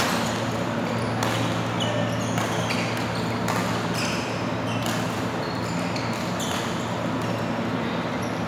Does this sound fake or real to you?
real